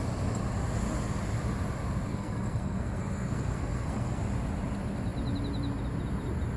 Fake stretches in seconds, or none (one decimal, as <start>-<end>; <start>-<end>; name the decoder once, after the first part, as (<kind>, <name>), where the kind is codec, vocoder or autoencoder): 2.1-4.2 (codec, SNAC)